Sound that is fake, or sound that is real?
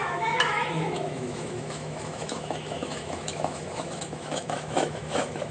fake